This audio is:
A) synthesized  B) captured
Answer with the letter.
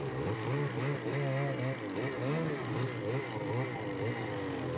B